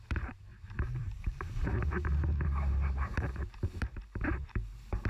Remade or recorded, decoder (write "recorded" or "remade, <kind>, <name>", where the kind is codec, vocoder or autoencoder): remade, vocoder, BigVGAN v2